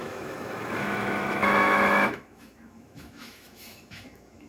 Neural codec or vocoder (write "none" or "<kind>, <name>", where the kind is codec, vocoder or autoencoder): autoencoder, DAC-VAE